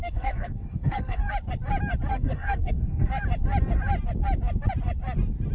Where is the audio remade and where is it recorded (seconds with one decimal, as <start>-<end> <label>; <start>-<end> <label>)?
0.0-1.3 remade; 1.3-2.1 recorded; 2.1-3.1 remade; 3.1-5.5 recorded